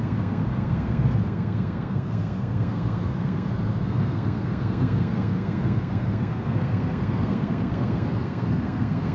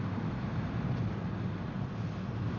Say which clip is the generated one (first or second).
first